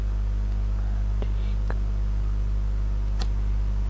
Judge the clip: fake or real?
real